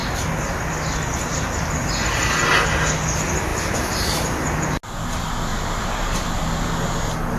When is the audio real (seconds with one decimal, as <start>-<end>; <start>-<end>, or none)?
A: 0.0-3.5; 4.1-5.5; 6.3-7.4